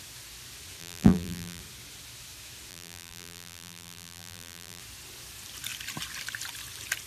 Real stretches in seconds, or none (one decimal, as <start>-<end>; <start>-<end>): 0.0-0.8; 1.6-2.7; 4.8-7.1